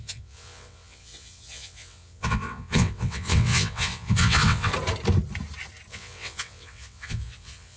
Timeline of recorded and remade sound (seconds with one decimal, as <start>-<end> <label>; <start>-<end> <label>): 0.0-4.7 remade; 4.7-5.9 recorded; 5.9-7.8 remade